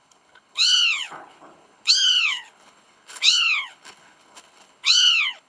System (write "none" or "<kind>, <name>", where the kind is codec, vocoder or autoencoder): codec, HILCodec